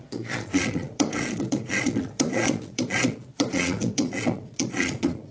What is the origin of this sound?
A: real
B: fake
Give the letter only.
B